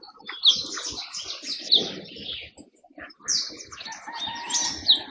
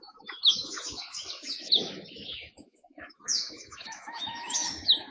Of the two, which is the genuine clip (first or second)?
first